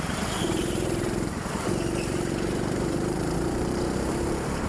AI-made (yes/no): yes